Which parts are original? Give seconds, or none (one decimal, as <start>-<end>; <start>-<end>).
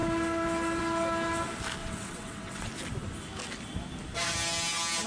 0.0-1.8; 2.7-5.1